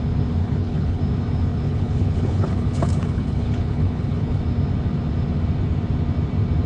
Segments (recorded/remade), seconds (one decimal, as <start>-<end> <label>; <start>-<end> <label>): 0.0-0.4 recorded; 0.4-1.0 remade; 1.0-1.5 recorded; 1.5-4.4 remade; 4.4-6.7 recorded